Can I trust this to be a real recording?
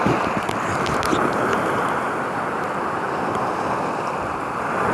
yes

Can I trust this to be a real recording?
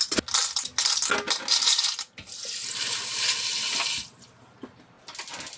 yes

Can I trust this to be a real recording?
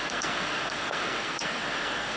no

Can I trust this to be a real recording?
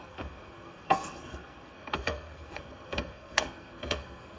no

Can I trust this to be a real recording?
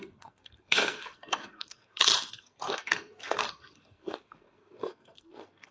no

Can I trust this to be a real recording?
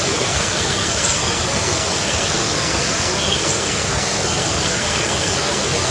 no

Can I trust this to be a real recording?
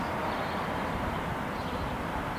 yes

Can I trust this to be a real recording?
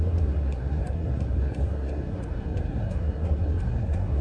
no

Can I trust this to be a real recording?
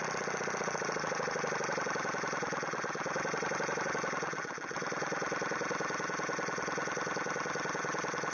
yes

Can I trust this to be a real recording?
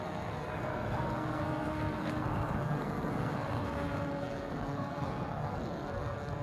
no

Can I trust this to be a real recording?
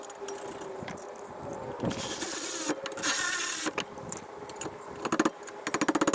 yes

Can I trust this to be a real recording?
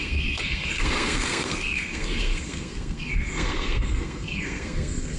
no